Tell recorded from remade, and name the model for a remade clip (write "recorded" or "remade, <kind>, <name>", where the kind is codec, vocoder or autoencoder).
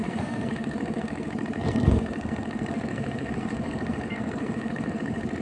remade, codec, SNAC